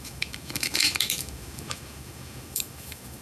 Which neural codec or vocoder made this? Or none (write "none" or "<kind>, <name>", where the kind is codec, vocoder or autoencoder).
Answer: autoencoder, DAC-VAE